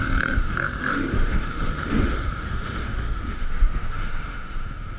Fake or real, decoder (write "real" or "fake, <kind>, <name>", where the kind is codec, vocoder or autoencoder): fake, autoencoder, DAC-VAE